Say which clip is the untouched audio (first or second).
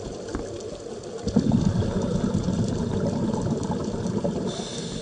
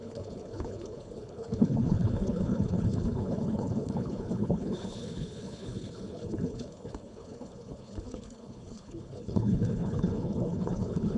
first